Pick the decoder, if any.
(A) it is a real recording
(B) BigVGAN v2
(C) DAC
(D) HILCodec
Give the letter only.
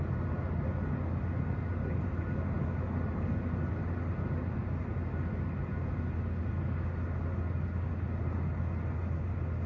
A